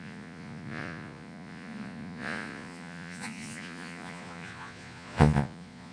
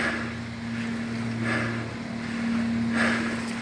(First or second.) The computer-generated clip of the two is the first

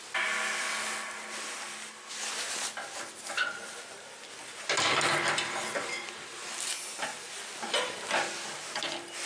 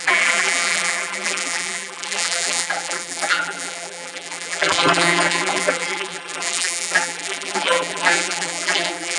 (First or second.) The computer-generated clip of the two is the second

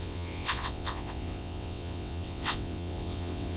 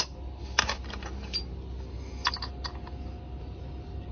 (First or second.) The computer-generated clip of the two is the first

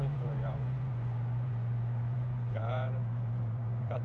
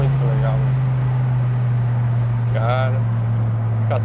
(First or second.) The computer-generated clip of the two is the first